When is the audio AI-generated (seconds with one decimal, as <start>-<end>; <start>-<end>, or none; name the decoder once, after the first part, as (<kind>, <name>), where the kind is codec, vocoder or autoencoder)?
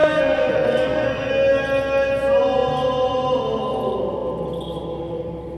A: 0.0-1.3 (codec, SNAC)